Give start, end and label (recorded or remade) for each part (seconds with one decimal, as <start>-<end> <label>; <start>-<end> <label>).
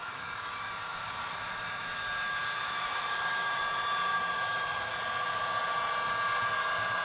0.0-3.6 remade; 3.6-4.1 recorded; 4.1-4.9 remade; 4.9-7.0 recorded